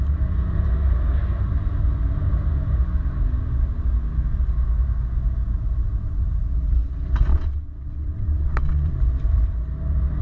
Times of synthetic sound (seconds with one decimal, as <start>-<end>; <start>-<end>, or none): 7.3-8.9